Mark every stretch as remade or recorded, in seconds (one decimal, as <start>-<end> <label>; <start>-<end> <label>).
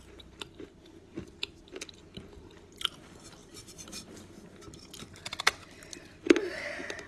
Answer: 0.0-7.1 recorded